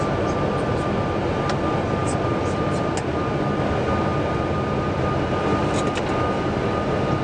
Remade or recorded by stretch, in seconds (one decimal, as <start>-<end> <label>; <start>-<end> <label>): 0.0-7.2 recorded